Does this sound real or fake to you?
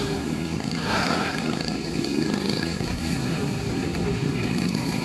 fake